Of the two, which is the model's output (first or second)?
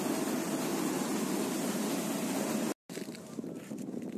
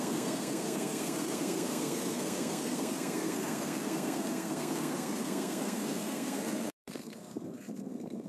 second